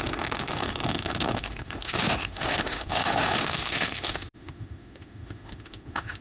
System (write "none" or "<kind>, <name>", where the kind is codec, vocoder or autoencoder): autoencoder, DAC-VAE